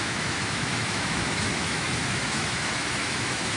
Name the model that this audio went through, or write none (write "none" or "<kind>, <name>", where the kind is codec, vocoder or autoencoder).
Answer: autoencoder, DAC-VAE